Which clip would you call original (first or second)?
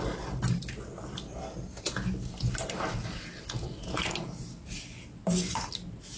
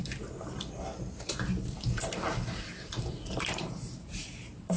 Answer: first